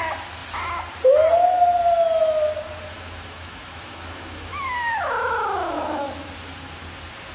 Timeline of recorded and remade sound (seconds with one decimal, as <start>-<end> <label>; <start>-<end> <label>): 0.0-2.9 recorded; 2.9-6.3 remade; 6.3-7.3 recorded